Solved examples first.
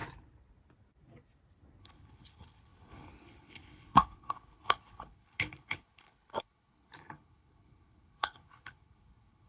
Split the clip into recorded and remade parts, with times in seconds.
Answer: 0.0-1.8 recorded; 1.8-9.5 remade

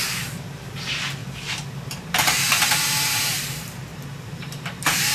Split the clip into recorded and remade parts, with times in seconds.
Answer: 0.0-5.1 remade

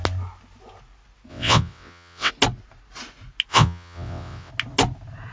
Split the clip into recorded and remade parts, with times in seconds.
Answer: 0.0-1.3 recorded; 1.3-2.3 remade; 2.3-3.5 recorded; 3.5-4.5 remade; 4.5-5.3 recorded

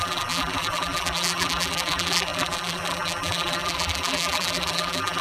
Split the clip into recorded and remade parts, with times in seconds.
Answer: 0.0-5.2 remade